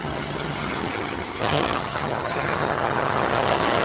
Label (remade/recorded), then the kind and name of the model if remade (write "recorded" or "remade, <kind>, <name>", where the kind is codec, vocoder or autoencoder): remade, vocoder, HiFi-GAN